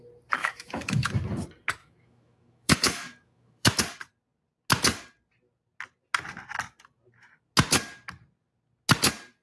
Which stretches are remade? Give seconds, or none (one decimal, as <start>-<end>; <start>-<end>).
0.4-1.1; 1.8-3.8